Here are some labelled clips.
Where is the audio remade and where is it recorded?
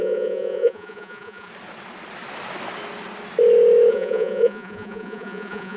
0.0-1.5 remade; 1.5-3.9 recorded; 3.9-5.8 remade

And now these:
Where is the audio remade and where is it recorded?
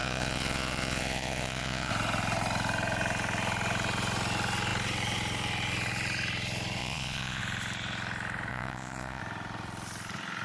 0.0-1.9 remade; 1.9-6.8 recorded; 6.8-7.4 remade; 7.4-8.5 recorded; 8.5-9.2 remade; 9.2-10.4 recorded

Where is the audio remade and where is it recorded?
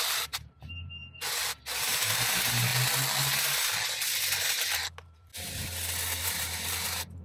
0.0-1.0 remade; 1.0-1.8 recorded; 1.8-2.7 remade; 2.7-4.4 recorded; 4.4-5.3 remade; 5.3-6.2 recorded; 6.2-7.2 remade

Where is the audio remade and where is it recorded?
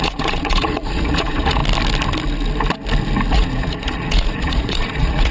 0.0-1.6 remade; 1.6-3.3 recorded; 3.3-5.3 remade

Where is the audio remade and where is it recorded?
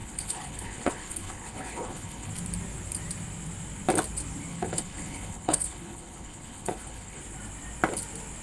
0.0-2.3 remade; 2.3-4.5 recorded; 4.5-7.2 remade; 7.2-8.4 recorded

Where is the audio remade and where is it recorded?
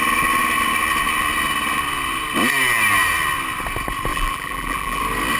0.0-4.1 recorded; 4.1-5.0 remade; 5.0-5.4 recorded